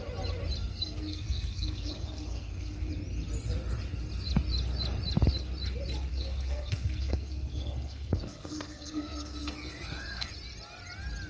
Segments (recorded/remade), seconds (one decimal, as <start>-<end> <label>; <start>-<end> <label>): 0.0-0.7 recorded; 0.7-2.9 remade; 2.9-6.1 recorded; 6.1-10.3 remade; 10.3-11.3 recorded